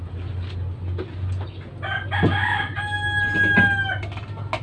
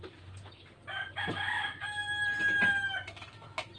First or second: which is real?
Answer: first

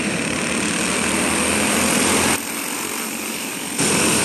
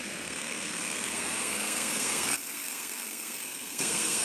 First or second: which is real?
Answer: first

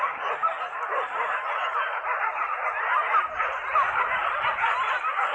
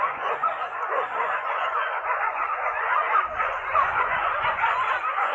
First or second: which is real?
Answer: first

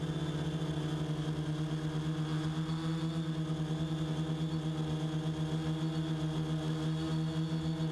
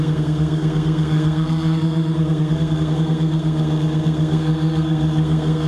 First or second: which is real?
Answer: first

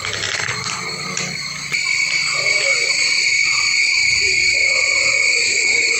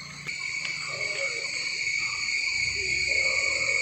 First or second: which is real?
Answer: second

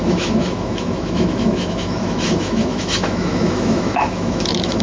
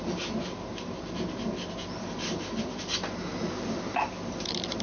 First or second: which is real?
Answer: second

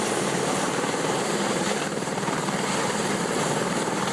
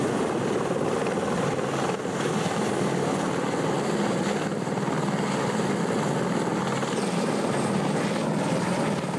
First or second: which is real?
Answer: second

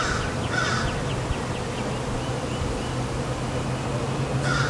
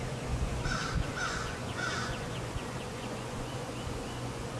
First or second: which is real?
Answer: first